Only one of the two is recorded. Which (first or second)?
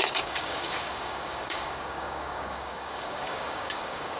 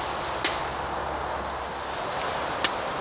second